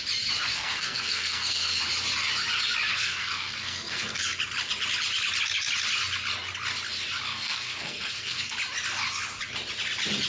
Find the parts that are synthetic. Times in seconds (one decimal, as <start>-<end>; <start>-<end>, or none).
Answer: 0.5-1.8; 2.9-4.3; 7.3-8.5